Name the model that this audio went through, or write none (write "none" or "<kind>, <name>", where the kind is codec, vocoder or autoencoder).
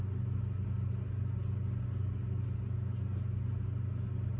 none